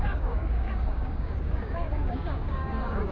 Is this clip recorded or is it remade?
remade